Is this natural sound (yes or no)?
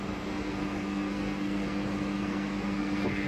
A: no